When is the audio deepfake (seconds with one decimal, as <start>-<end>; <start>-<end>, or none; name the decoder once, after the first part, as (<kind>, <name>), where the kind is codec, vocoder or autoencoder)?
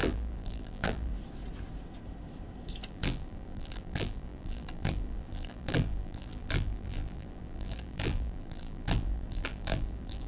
0.0-1.1 (vocoder, BigVGAN v2); 2.9-10.3